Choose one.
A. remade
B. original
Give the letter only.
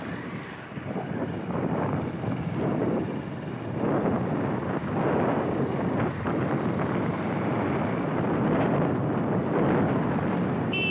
B